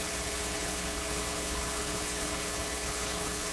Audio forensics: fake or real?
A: fake